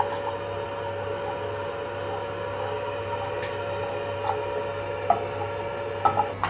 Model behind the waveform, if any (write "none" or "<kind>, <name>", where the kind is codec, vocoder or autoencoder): none